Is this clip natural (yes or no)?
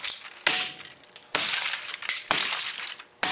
yes